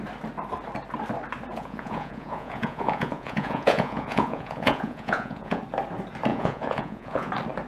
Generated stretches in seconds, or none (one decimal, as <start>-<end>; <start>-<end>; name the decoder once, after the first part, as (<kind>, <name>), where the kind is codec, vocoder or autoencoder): 1.5-5.6 (vocoder, Vocos); 6.3-7.3